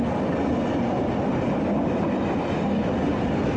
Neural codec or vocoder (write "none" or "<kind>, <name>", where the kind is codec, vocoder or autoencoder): vocoder, BigVGAN v2